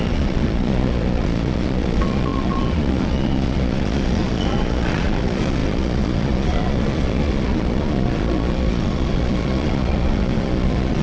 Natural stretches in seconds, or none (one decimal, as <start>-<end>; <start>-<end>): none